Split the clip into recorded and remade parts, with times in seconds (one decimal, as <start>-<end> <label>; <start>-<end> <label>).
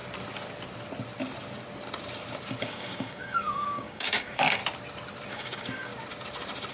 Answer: 0.0-2.6 recorded; 2.6-4.6 remade; 4.6-5.3 recorded; 5.3-5.9 remade; 5.9-6.7 recorded